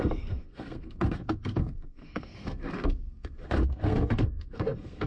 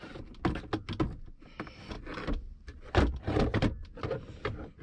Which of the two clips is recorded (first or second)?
second